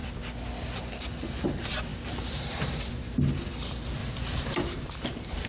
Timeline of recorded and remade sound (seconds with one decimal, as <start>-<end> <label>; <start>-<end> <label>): 0.0-1.9 recorded; 1.9-2.9 remade; 2.9-4.0 recorded; 4.0-5.5 remade